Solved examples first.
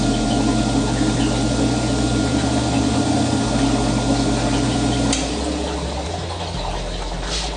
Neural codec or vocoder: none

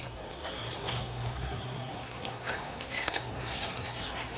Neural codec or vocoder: codec, SNAC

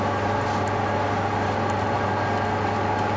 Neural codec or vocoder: none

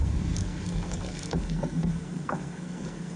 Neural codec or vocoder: codec, SNAC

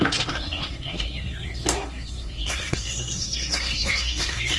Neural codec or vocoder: codec, SNAC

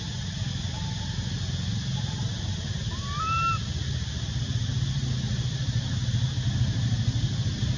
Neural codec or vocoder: none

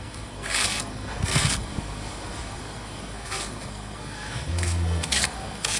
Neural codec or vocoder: codec, SNAC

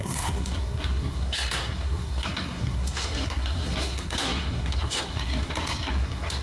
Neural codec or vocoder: codec, SNAC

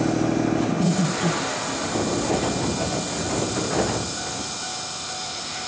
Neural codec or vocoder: none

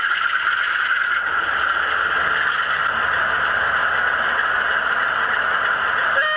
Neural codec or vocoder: none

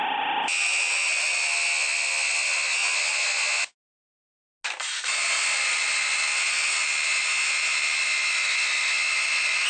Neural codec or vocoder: none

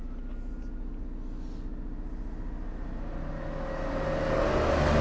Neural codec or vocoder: none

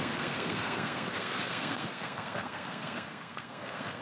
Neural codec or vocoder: codec, SNAC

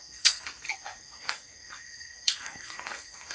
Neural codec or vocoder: codec, SNAC